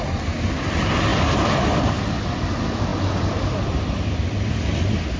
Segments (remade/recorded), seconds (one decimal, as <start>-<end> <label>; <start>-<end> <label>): 0.0-5.2 recorded